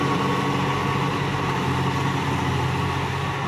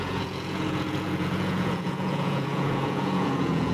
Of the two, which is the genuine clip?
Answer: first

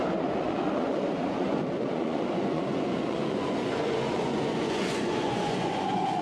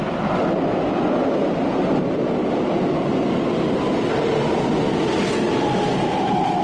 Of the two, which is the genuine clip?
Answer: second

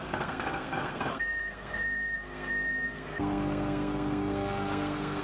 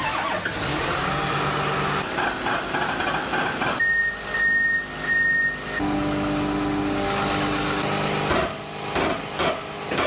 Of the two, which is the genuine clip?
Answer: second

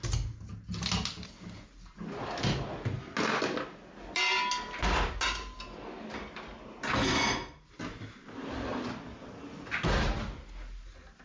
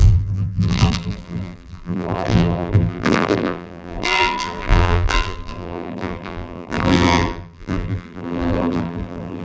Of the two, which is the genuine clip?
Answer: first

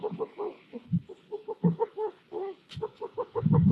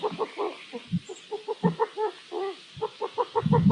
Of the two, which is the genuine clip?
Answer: second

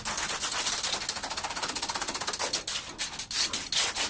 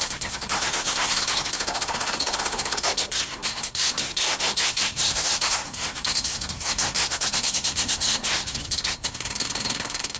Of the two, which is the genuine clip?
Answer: first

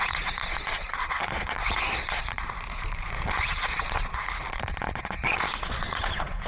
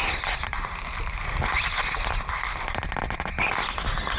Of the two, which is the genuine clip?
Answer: second